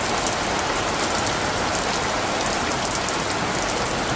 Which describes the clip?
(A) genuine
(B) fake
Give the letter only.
A